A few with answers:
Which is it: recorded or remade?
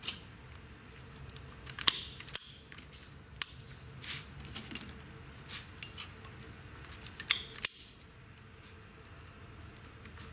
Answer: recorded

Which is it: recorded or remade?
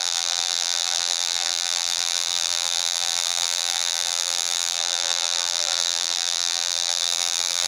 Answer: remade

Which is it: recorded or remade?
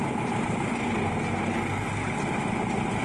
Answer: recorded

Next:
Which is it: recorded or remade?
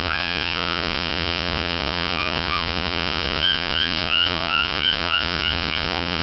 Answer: remade